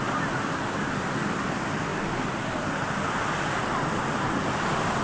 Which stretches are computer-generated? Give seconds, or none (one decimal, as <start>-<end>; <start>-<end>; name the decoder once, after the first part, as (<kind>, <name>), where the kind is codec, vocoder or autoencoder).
none